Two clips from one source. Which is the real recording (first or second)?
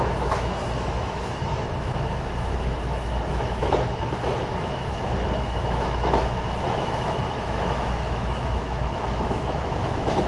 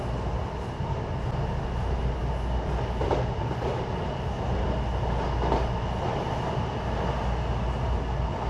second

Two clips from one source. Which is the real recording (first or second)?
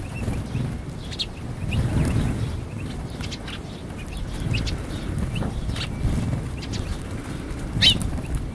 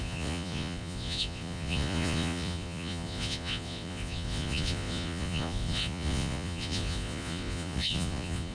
first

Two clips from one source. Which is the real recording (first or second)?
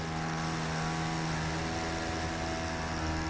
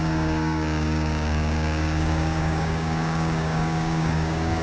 first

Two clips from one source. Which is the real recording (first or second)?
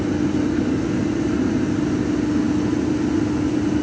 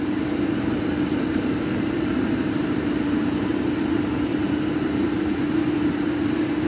first